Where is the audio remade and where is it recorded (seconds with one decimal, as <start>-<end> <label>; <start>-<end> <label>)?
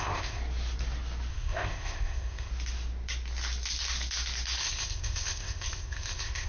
0.0-0.4 remade; 0.4-1.3 recorded; 1.3-2.5 remade; 2.5-4.6 recorded; 4.6-6.5 remade